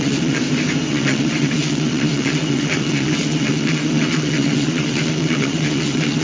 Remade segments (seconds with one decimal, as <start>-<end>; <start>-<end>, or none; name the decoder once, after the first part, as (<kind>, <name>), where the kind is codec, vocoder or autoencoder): 0.0-0.4 (vocoder, WaveNeXt); 0.9-6.2